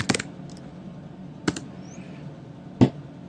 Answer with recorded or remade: recorded